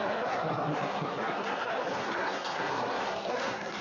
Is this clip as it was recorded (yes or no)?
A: no